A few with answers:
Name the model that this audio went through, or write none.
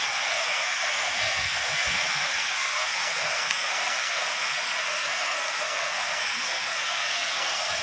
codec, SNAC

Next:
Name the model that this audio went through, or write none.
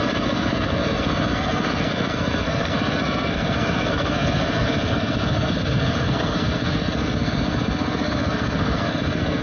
codec, SNAC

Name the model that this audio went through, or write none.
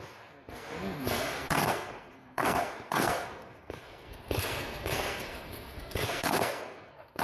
codec, SNAC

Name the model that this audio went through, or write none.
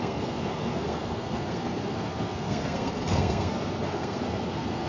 codec, SNAC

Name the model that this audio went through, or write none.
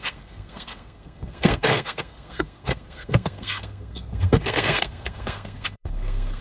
codec, SNAC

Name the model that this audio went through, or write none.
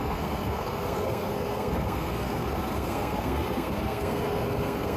codec, SNAC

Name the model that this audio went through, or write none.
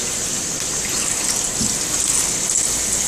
none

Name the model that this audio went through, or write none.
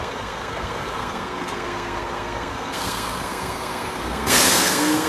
codec, SNAC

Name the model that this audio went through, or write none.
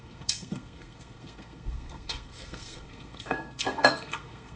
codec, SNAC